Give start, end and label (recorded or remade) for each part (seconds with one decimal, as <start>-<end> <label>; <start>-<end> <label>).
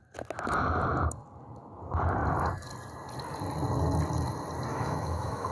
0.0-4.7 recorded; 4.7-5.5 remade